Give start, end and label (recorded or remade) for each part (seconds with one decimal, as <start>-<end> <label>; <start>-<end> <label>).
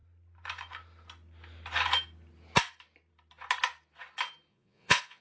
0.0-4.5 recorded; 4.5-5.2 remade